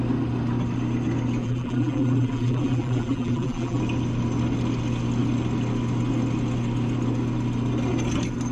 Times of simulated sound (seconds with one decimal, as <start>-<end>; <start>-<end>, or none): 1.4-3.8